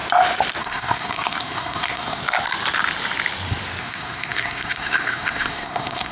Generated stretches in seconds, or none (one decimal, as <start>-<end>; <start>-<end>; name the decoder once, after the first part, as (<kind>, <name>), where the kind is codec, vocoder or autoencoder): 0.6-2.2 (codec, SNAC); 3.8-6.1